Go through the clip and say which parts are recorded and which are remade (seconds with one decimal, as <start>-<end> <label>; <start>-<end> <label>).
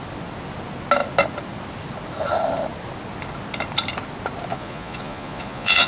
0.0-4.5 recorded; 4.5-5.9 remade